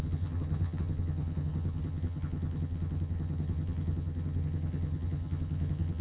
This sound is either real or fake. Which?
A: fake